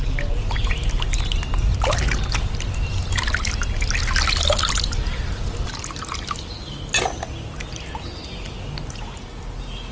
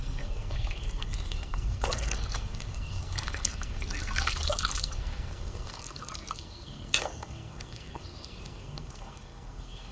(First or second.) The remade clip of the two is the second